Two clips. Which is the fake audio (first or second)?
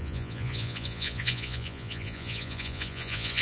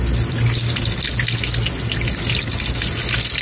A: first